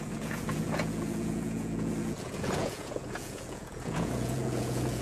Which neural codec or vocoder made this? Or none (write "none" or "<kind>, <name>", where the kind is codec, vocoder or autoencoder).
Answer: vocoder, Vocos